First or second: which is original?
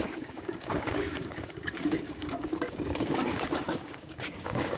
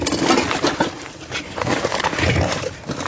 second